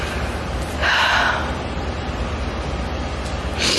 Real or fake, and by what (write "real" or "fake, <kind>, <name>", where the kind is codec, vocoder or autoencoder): real